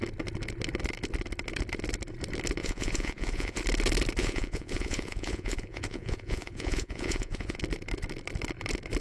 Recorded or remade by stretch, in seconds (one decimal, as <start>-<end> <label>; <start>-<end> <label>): 0.0-2.6 recorded; 2.6-3.6 remade; 3.6-4.2 recorded; 4.2-7.6 remade; 7.6-9.0 recorded